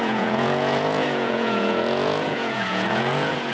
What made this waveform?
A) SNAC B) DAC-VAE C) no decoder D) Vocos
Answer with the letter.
D